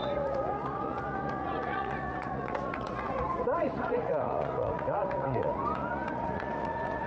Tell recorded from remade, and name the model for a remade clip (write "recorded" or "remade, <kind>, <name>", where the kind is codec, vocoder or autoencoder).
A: remade, vocoder, Vocos